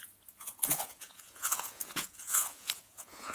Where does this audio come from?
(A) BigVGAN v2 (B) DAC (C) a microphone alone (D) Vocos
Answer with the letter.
D